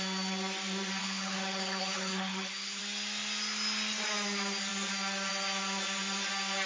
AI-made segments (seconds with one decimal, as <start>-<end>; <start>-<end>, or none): 1.0-2.8